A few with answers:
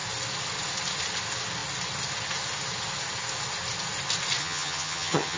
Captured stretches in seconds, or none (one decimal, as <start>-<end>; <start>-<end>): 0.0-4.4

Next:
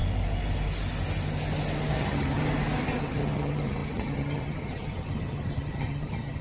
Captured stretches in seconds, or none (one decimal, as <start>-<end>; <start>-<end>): 0.0-1.9; 2.4-3.0

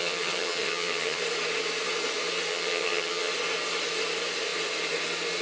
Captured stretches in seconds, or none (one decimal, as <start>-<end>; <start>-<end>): 1.2-2.5; 3.3-5.4

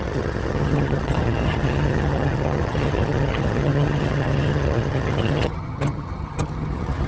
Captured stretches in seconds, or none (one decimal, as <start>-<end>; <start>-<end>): none

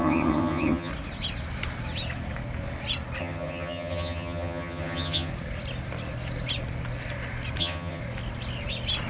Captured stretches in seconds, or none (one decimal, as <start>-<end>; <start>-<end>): 0.9-3.2; 5.3-7.6; 8.0-9.1